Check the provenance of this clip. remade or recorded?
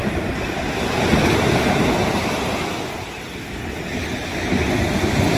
recorded